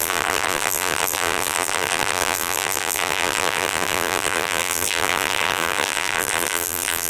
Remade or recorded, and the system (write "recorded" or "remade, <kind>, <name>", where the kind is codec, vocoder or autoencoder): remade, vocoder, BigVGAN v2